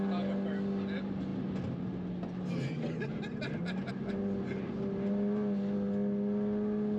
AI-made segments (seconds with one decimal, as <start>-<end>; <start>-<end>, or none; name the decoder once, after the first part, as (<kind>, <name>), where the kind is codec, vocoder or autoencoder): none